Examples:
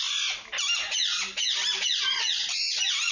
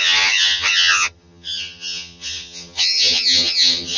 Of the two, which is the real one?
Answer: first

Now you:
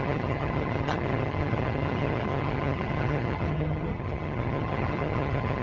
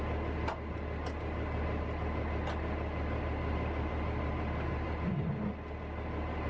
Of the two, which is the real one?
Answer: second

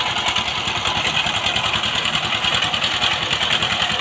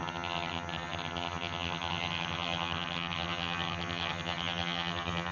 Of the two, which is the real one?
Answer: first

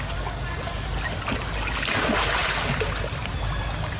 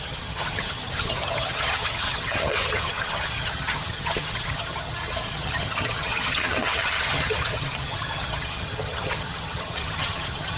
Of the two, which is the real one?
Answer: first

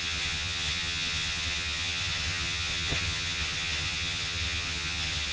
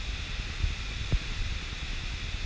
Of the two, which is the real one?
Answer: second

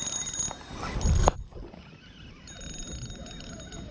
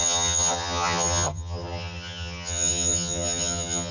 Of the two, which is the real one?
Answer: first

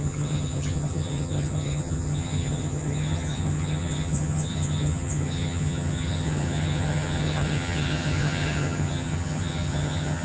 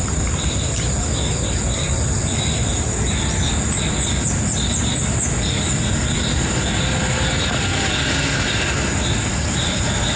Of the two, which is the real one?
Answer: second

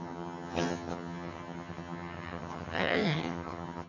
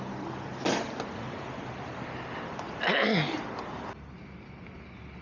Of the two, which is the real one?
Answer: second